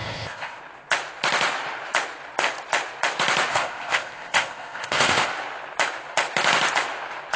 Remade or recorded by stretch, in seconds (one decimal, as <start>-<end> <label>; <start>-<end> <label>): 0.0-0.6 remade; 0.6-3.5 recorded; 3.5-5.3 remade; 5.3-7.4 recorded